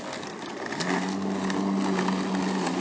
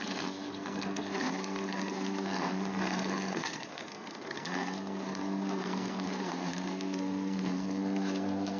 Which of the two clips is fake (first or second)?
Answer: second